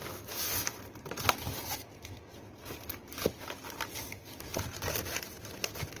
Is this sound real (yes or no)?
yes